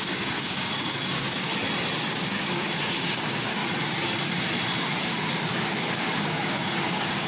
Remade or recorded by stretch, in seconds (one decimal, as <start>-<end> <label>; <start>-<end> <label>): 0.0-1.5 remade; 1.5-2.1 recorded; 2.1-3.6 remade; 3.6-5.0 recorded; 5.0-7.3 remade